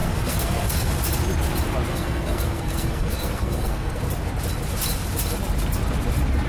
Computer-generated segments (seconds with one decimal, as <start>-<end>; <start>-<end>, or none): 0.0-0.9; 1.9-4.0